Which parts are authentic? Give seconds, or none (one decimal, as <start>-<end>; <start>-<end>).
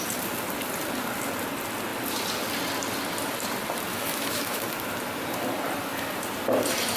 0.0-3.9; 4.6-7.0